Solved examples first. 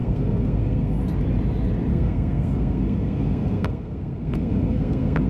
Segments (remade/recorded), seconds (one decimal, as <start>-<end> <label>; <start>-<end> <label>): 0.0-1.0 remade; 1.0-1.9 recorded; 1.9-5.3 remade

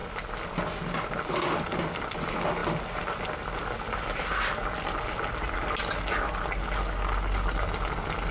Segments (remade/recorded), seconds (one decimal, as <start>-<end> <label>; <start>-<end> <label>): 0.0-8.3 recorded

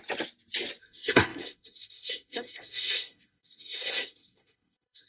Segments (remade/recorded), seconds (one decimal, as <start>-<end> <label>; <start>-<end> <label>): 0.0-0.8 recorded; 0.8-5.1 remade